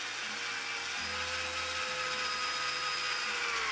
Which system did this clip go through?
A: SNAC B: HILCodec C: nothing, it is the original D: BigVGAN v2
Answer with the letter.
C